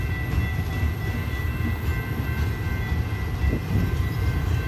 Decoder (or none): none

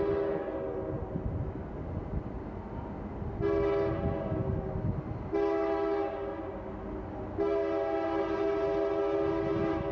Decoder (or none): none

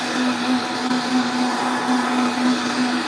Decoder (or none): none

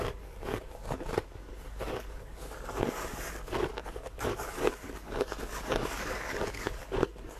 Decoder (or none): codec, DAC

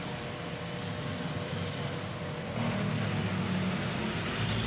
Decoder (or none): none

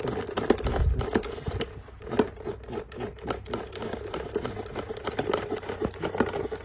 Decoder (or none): none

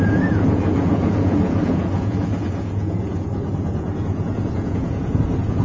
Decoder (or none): vocoder, Vocos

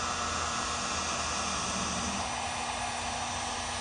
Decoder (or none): none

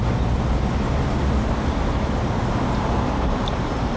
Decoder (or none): none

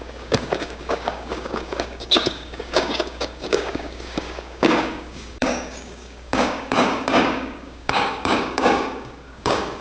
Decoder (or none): codec, DAC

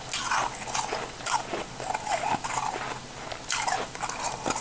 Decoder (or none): none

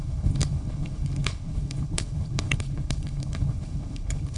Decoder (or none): codec, HILCodec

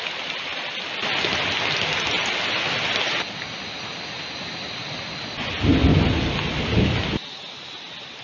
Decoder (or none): none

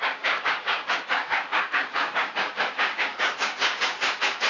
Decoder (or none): codec, DAC